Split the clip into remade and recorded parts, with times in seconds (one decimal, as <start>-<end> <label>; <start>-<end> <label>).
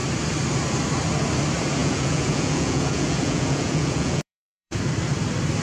0.0-1.8 recorded; 1.8-4.8 remade; 4.8-5.6 recorded